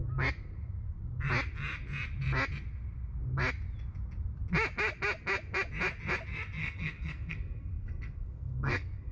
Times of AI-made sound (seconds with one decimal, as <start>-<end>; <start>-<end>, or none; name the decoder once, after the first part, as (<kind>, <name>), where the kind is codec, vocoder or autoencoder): 6.6-9.1 (codec, SNAC)